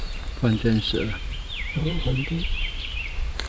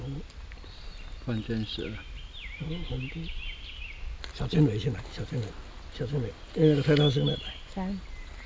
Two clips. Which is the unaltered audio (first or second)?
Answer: second